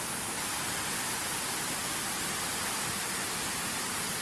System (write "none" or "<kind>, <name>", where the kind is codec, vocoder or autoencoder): none